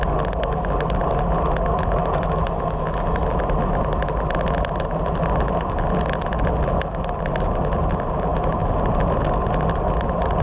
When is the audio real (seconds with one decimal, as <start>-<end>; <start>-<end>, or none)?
0.0-10.4